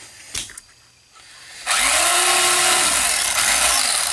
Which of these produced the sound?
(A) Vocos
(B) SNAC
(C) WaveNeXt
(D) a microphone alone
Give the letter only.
D